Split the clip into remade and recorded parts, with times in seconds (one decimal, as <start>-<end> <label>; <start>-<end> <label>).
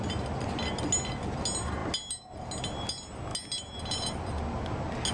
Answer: 0.0-5.1 recorded